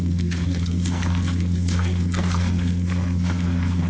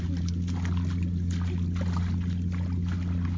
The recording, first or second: second